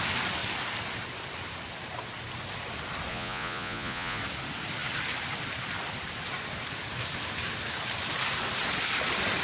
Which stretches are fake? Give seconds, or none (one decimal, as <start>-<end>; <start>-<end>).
3.1-4.2